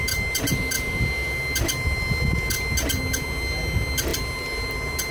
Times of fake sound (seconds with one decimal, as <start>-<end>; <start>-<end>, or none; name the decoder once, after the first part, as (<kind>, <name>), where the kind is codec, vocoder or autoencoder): none